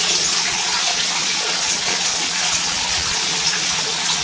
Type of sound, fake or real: fake